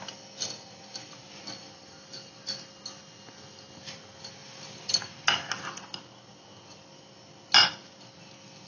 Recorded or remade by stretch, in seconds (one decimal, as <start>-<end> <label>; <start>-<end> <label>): 0.0-8.7 recorded